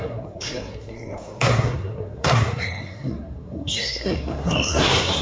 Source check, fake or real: fake